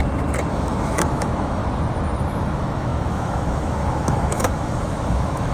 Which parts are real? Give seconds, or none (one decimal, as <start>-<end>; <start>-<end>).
0.0-0.5; 1.6-2.4